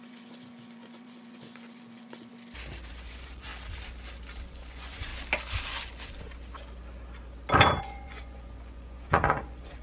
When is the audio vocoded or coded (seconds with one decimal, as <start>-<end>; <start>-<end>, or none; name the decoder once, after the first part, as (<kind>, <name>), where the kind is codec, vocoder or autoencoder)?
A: 0.0-2.3 (vocoder, Vocos); 2.9-3.5; 4.5-5.1; 7.8-9.8